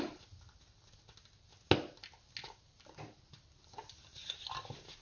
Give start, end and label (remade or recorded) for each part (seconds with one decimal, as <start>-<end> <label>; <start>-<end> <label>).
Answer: 0.0-5.0 recorded